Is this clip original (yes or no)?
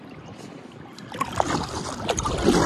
yes